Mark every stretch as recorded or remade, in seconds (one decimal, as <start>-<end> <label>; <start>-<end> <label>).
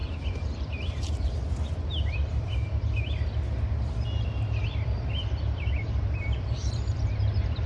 0.0-2.6 remade; 2.6-5.2 recorded; 5.2-7.7 remade